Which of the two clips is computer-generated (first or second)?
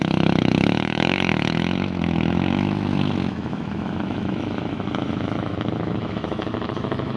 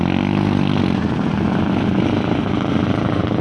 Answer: first